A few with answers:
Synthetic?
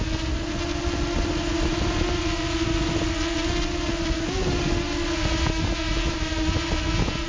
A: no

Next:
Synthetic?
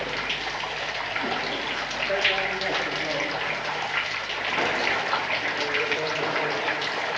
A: no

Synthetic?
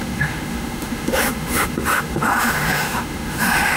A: yes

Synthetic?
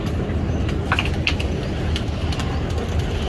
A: no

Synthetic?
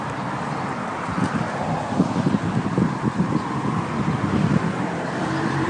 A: yes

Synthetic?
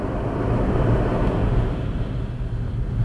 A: no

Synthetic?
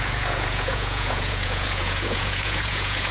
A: yes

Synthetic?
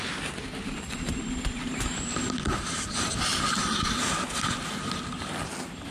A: no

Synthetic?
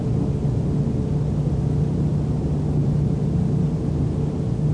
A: no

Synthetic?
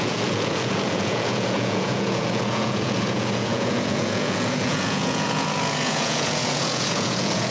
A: yes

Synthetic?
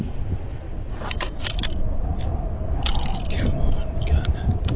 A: no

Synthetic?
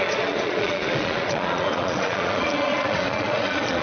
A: yes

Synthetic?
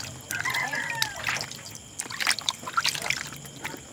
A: no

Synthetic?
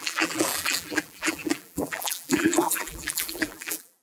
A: yes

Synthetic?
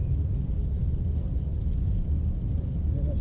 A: no